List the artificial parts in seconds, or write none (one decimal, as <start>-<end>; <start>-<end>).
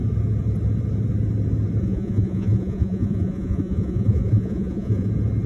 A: 1.8-5.1